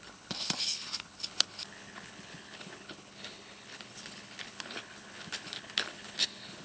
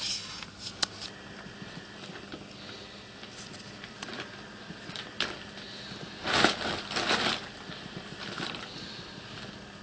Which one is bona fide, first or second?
second